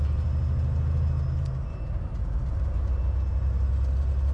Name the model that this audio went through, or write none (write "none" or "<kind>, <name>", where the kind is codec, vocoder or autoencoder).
none